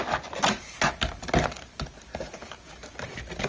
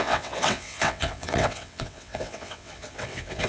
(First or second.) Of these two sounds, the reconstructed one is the second